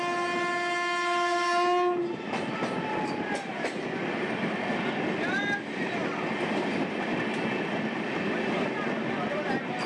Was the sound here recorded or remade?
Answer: recorded